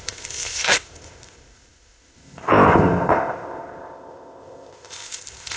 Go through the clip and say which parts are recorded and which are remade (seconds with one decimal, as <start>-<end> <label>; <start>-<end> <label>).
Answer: 0.0-5.6 remade